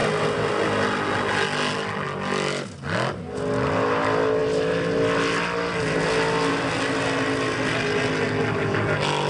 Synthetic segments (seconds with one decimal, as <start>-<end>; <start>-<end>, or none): none